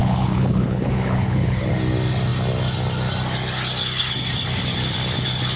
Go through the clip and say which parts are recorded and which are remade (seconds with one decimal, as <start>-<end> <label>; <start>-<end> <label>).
0.0-1.7 remade; 1.7-5.6 recorded